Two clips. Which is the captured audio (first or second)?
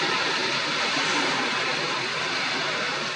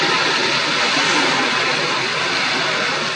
second